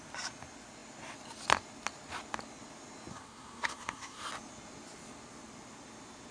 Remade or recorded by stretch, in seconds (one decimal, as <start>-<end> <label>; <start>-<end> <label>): 0.0-3.1 recorded; 3.1-4.3 remade; 4.3-6.3 recorded